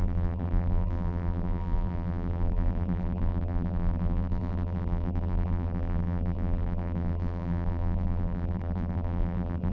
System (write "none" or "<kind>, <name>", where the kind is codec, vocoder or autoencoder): vocoder, BigVGAN v2